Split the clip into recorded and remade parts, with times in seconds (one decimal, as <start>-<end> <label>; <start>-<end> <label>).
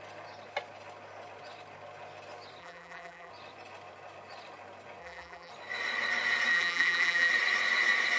0.0-2.6 recorded; 2.6-3.3 remade; 3.3-5.0 recorded; 5.0-5.5 remade; 5.5-6.5 recorded; 6.5-7.3 remade; 7.3-8.2 recorded